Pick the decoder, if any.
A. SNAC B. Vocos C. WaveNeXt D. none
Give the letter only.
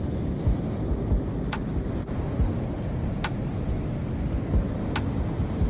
D